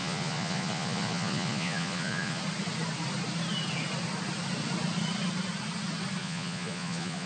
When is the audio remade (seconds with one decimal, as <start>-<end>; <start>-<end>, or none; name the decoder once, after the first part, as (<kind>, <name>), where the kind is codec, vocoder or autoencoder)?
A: 0.0-2.4 (vocoder, Vocos); 6.2-7.3

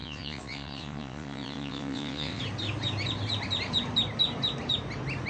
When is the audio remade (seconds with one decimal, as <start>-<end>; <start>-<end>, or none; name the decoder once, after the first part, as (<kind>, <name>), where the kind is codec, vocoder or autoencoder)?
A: 0.0-2.4 (vocoder, WaveNeXt)